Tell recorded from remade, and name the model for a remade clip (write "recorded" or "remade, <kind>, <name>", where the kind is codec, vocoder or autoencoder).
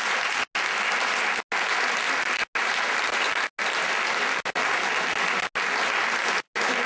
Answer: recorded